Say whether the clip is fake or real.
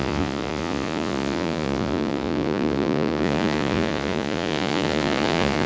fake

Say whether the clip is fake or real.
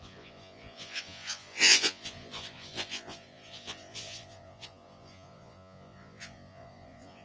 fake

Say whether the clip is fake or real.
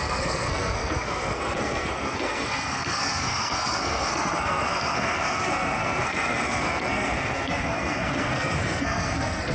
fake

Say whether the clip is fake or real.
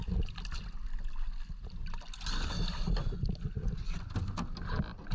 real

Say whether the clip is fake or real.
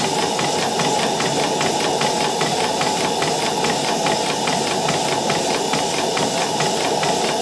real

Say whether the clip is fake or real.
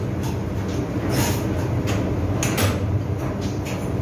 real